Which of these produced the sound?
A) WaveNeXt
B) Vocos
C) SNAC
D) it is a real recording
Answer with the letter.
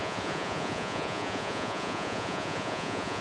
B